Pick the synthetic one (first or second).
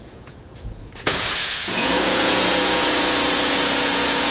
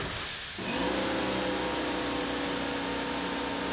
first